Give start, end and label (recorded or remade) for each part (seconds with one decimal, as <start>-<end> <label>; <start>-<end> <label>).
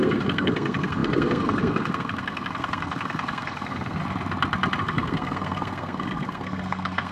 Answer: 0.0-4.0 remade; 4.0-4.8 recorded; 4.8-7.1 remade